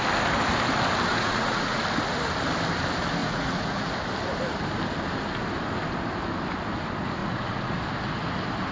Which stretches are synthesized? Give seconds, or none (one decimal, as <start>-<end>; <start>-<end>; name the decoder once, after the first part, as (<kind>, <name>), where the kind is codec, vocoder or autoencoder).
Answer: 1.1-1.8 (vocoder, Vocos); 3.2-3.9; 7.2-7.8

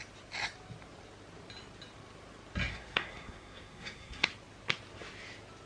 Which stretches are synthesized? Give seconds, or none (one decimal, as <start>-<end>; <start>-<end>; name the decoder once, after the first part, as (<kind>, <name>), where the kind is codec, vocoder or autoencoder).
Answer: 2.7-4.3 (codec, SNAC)

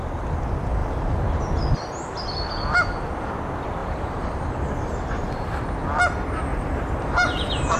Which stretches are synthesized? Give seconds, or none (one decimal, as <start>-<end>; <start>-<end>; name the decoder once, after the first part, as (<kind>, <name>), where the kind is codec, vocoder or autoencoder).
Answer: 0.8-1.4 (vocoder, BigVGAN v2); 3.8-5.6; 6.5-7.8

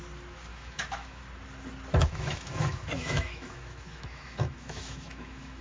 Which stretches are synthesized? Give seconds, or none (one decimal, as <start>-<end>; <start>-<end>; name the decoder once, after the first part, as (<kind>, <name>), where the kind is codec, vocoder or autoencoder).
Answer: 0.5-1.2 (autoencoder, DAC-VAE); 2.0-5.6